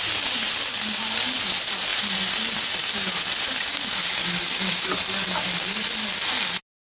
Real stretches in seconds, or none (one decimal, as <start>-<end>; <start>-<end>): 0.0-6.9